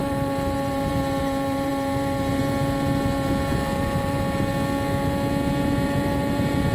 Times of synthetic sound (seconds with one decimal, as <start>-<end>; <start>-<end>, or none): 0.0-4.5; 5.5-6.7

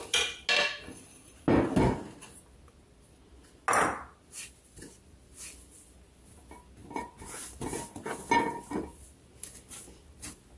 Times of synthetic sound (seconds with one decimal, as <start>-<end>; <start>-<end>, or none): none

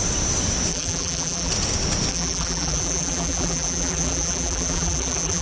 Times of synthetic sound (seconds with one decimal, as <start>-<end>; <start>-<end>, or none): 0.7-1.5; 2.1-5.4

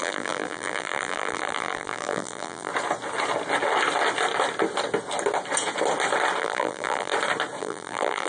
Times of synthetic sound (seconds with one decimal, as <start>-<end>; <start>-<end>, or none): 0.0-2.7; 6.4-7.1; 7.6-8.3

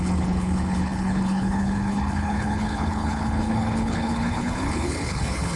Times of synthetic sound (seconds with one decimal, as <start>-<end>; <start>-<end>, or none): 0.0-5.6